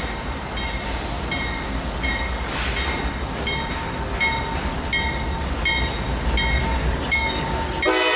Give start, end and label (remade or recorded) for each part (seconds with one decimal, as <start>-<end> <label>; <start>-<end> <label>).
0.0-6.8 recorded; 6.8-7.5 remade; 7.5-8.2 recorded